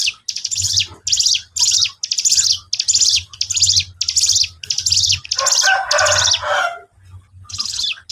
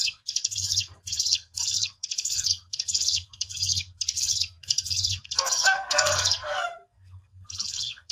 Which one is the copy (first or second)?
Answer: second